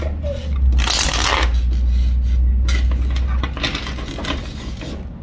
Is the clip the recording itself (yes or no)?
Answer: yes